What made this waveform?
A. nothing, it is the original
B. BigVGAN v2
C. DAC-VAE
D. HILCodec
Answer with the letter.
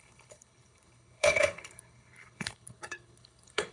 D